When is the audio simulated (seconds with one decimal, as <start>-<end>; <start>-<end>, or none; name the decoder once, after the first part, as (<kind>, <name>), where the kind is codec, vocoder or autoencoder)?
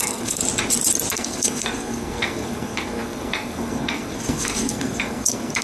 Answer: 0.0-0.4 (codec, SNAC); 1.1-5.6